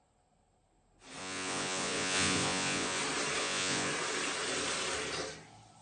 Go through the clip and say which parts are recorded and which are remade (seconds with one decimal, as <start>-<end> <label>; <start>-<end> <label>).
0.0-1.2 recorded; 1.2-3.0 remade; 3.0-3.4 recorded; 3.4-3.9 remade; 3.9-5.8 recorded